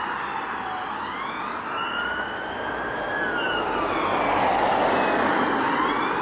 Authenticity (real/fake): real